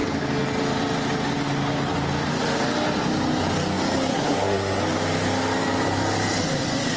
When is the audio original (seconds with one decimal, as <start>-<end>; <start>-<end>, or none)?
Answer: 0.0-4.1; 4.8-7.0